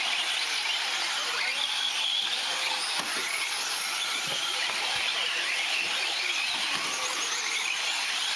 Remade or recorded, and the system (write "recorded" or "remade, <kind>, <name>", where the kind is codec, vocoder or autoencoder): recorded